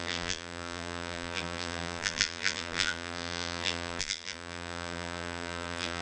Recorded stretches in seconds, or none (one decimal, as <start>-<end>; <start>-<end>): none